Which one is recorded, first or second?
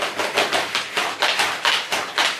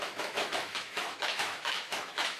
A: first